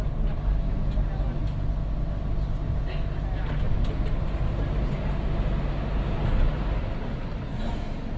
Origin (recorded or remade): recorded